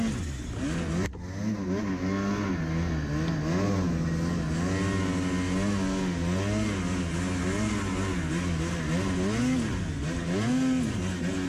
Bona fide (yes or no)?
yes